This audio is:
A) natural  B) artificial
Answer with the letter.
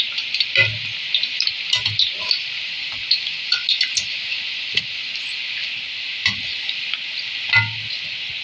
A